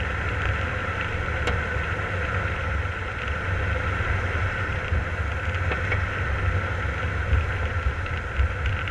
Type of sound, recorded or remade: recorded